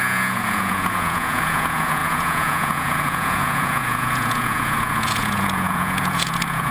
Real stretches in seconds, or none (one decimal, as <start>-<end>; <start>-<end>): none

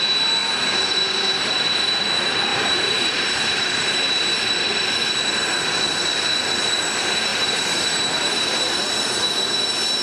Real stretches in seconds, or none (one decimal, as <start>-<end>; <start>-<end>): 0.0-2.5; 4.1-7.3; 8.7-10.0

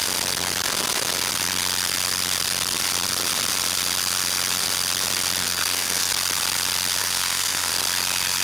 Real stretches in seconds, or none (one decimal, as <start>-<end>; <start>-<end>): 0.0-5.4; 6.1-7.0; 7.7-8.4

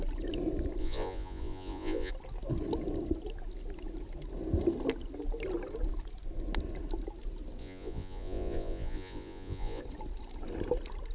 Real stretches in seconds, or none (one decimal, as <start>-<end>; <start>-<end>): 0.0-0.8; 2.1-7.6; 9.8-11.1

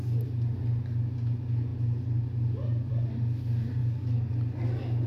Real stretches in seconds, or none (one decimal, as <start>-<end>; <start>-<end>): 0.0-3.8; 4.3-5.1

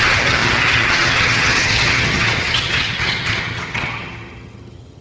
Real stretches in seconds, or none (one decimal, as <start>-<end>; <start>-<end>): none

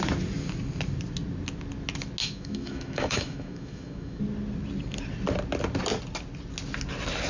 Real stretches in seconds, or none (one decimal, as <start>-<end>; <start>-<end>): 0.0-2.2; 4.2-7.3